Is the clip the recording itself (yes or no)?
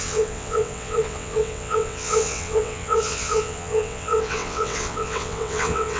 no